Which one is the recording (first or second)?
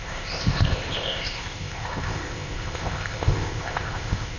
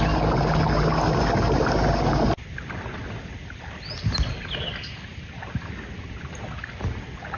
second